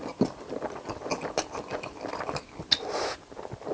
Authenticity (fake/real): real